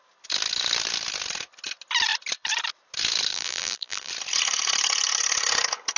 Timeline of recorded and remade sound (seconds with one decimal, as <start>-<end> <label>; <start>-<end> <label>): 0.0-3.3 recorded; 3.3-4.1 remade; 4.1-6.0 recorded